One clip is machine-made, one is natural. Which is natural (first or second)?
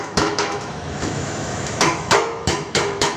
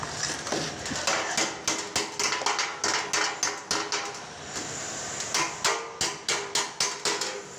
second